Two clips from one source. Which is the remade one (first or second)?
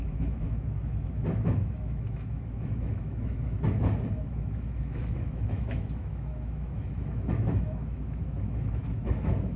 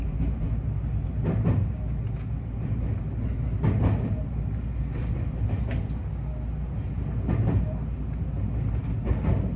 first